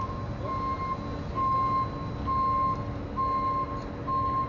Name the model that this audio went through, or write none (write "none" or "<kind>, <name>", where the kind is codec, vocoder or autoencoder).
none